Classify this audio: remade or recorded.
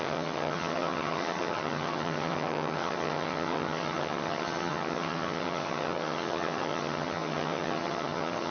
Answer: remade